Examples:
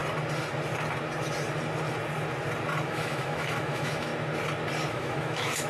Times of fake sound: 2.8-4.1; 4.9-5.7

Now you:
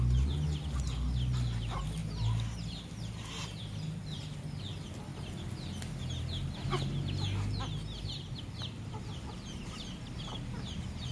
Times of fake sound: none

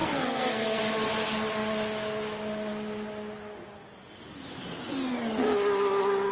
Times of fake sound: 0.0-0.8

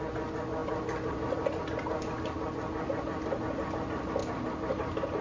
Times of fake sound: none

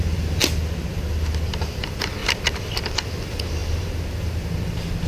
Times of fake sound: 0.0-0.4; 1.8-2.2; 2.8-5.1

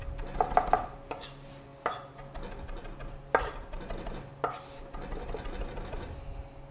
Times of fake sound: none

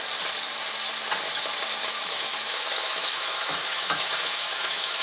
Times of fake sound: 1.8-5.0

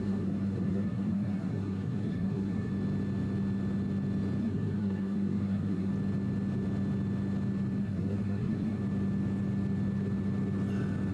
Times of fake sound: 0.0-2.7; 4.4-5.9; 7.8-8.8